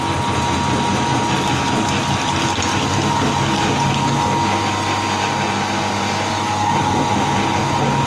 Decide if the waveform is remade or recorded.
recorded